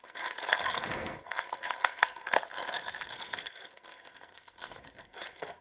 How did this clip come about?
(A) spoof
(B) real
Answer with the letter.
A